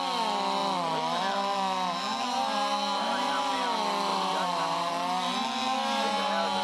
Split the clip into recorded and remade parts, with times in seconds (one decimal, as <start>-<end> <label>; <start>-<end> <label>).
0.0-3.0 recorded; 3.0-3.5 remade; 3.5-4.1 recorded; 4.1-4.9 remade; 4.9-6.6 recorded